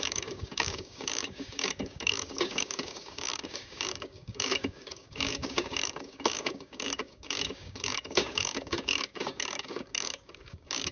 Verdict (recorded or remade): remade